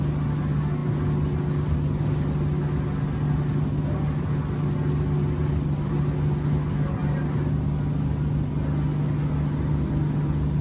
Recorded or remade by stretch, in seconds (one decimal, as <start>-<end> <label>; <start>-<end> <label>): 0.0-10.6 recorded

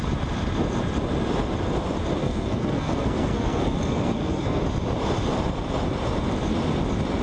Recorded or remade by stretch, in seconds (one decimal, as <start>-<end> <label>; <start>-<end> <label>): 0.0-2.2 recorded; 2.2-4.6 remade; 4.6-7.2 recorded

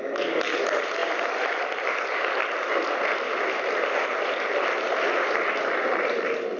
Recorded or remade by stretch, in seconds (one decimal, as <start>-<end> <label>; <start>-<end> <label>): 0.0-6.6 recorded

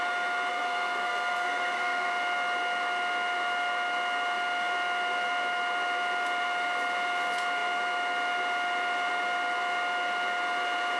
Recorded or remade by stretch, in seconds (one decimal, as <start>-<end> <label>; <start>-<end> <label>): 0.0-0.5 recorded; 0.5-2.1 remade; 2.1-11.0 recorded

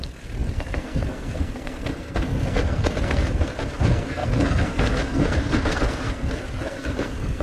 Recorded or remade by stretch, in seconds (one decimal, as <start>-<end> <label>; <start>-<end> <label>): 0.0-7.4 remade

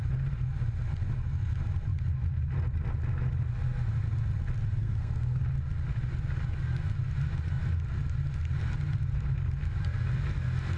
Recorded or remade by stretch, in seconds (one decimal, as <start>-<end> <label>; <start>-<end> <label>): 0.0-4.8 recorded; 4.8-5.4 remade; 5.4-10.8 recorded